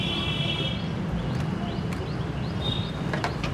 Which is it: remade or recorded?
remade